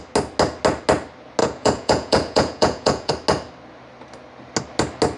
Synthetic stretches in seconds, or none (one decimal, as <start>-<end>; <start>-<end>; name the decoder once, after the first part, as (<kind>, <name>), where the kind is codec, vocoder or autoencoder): 1.4-3.1 (vocoder, Vocos)